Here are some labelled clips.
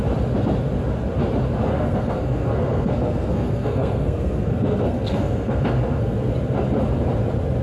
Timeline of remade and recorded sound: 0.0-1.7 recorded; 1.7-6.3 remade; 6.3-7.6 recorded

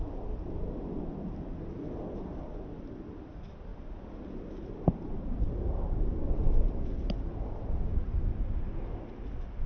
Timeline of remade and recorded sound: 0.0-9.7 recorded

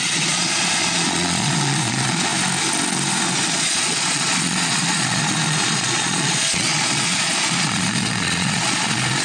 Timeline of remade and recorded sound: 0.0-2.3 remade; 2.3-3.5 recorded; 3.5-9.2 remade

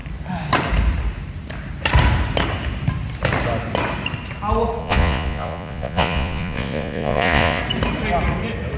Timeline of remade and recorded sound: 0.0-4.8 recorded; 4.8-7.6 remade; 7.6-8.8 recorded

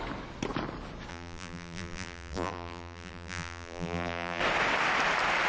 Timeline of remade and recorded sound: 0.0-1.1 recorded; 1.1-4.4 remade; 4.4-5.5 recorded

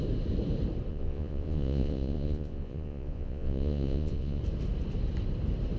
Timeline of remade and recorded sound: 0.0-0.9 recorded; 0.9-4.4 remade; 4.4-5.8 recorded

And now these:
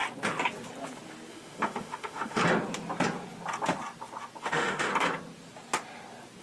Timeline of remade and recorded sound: 0.0-1.3 recorded; 1.3-2.4 remade; 2.4-4.4 recorded; 4.4-4.9 remade; 4.9-6.4 recorded